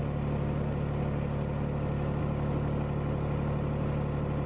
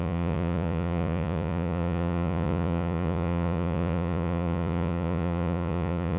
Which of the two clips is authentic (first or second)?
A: first